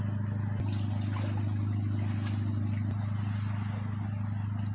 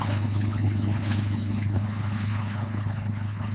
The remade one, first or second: second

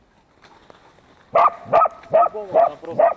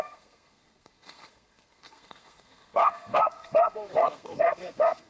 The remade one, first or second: second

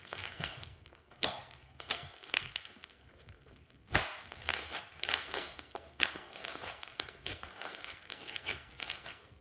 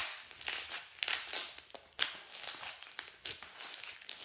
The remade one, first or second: first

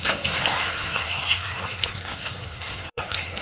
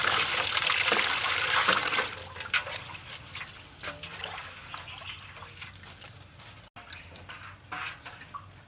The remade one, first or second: first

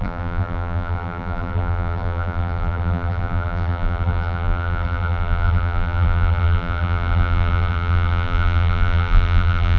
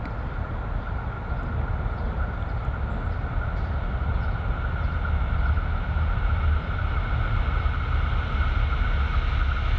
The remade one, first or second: first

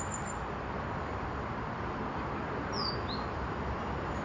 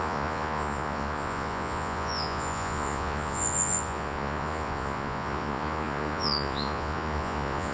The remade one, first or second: second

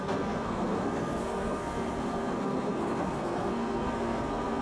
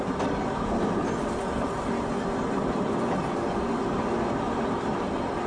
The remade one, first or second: first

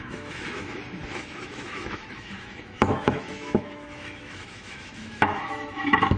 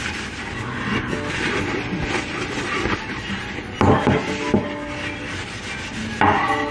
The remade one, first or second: first